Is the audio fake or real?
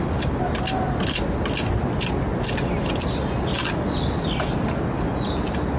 real